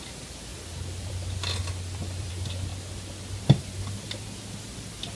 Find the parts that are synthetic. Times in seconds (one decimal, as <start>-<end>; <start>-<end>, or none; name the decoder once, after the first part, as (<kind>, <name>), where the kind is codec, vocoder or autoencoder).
0.5-2.3 (vocoder, BigVGAN v2)